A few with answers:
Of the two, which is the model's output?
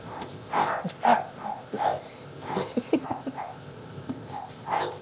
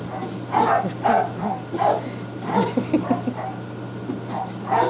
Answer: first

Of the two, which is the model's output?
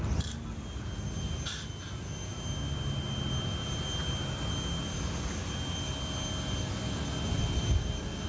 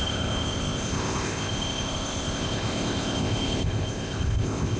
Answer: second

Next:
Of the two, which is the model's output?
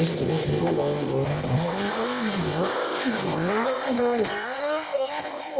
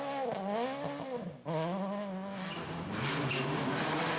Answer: first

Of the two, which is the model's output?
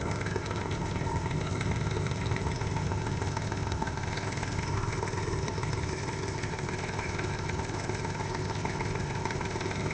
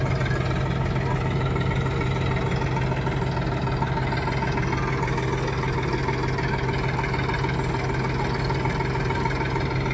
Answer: first